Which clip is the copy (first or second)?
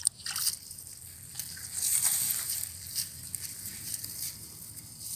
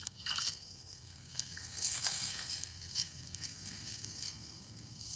second